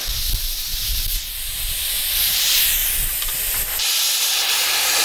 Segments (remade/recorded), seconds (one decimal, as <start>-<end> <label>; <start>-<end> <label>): 0.0-0.7 recorded; 0.7-2.1 remade; 2.1-2.8 recorded; 2.8-4.4 remade; 4.4-5.0 recorded